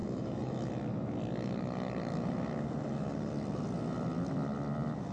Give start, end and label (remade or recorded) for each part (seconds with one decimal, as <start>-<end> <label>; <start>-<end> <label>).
0.0-0.7 remade; 0.7-5.1 recorded